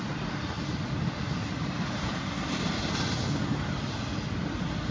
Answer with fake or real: real